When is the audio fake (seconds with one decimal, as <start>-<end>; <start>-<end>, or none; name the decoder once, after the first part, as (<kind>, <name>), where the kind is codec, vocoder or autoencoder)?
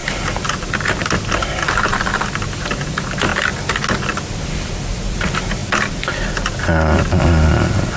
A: 2.9-3.3 (vocoder, BigVGAN v2); 4.0-5.6; 6.5-8.0